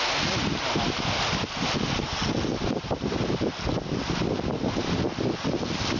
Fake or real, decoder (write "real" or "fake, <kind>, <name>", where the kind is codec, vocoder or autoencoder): real